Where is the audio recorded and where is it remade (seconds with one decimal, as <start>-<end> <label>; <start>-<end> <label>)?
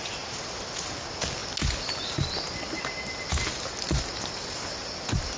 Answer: 0.0-5.4 recorded